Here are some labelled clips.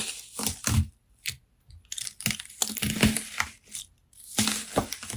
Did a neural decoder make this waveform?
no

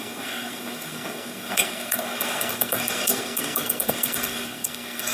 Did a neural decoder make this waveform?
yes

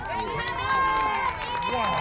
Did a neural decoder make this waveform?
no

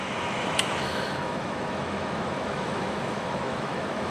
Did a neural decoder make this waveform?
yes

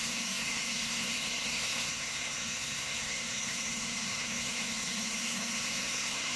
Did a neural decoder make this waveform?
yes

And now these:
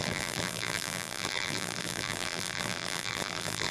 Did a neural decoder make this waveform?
yes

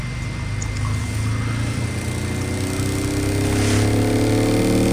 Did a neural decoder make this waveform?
no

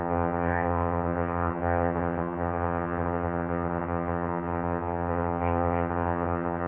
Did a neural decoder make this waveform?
yes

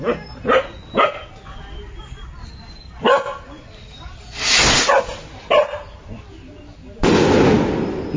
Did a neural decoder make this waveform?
no